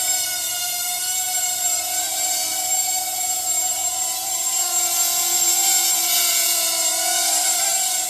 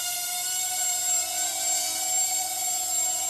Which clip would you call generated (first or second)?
first